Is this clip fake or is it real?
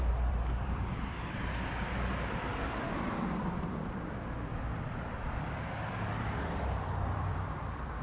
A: fake